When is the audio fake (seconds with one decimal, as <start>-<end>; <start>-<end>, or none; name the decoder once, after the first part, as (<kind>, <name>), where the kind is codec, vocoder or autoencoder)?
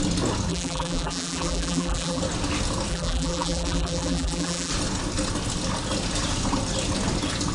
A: 0.5-2.2 (vocoder, BigVGAN v2); 2.9-4.7